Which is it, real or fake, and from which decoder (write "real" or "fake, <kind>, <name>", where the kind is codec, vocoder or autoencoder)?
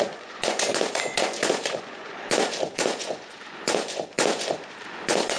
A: fake, vocoder, Vocos